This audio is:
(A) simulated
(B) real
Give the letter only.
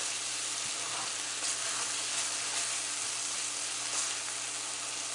B